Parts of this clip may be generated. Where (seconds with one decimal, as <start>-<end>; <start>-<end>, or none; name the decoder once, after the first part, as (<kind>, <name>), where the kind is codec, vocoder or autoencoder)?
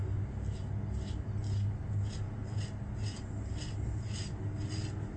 none